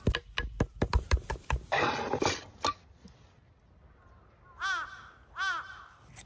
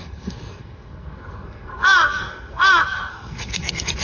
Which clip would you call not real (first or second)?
second